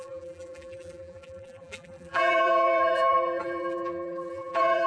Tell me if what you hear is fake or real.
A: fake